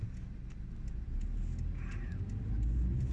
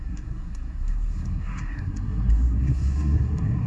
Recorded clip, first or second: first